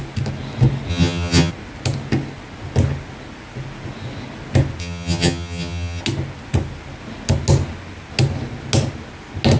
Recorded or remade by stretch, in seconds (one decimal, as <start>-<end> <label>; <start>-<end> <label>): 0.0-0.9 recorded; 0.9-1.5 remade; 1.5-4.8 recorded; 4.8-6.0 remade; 6.0-9.6 recorded